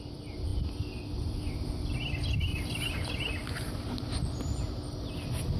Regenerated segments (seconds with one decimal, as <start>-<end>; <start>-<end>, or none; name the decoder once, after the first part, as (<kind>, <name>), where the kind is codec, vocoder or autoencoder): 2.5-5.1 (vocoder, BigVGAN v2)